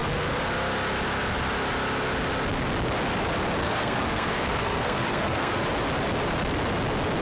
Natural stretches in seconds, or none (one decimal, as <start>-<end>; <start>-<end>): 0.0-3.6; 5.6-7.2